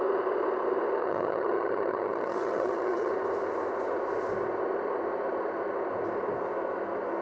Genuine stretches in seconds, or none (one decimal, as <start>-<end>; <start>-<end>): 0.0-1.0; 3.1-7.2